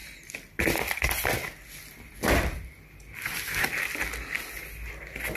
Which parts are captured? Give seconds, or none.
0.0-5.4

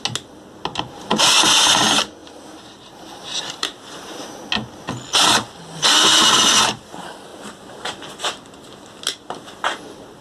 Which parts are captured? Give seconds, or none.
0.0-2.2; 4.4-10.2

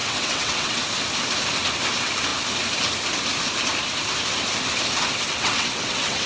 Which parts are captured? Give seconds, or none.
0.8-5.3

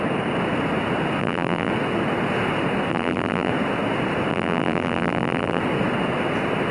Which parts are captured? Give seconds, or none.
0.0-1.2; 1.7-2.9; 3.5-4.3; 5.6-6.7